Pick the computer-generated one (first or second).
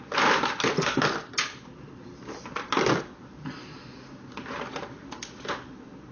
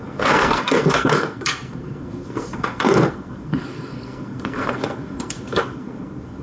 second